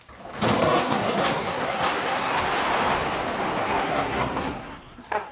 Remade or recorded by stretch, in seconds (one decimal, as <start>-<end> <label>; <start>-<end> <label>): 0.0-0.6 recorded; 0.6-2.4 remade; 2.4-3.6 recorded; 3.6-5.3 remade